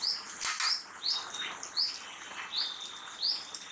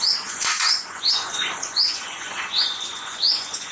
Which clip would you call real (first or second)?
first